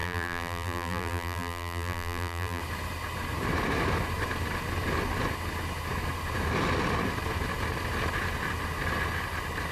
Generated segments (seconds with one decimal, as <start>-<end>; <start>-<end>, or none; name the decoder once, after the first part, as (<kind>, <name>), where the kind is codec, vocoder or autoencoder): 0.0-2.6 (vocoder, BigVGAN v2)